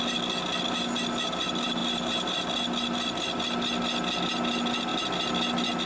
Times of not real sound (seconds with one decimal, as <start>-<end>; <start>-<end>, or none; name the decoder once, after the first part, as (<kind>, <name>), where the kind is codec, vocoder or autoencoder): none